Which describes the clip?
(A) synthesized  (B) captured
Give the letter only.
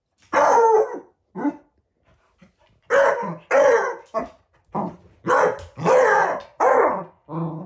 B